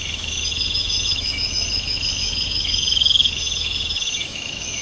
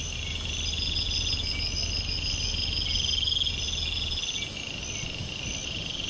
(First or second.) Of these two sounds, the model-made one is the first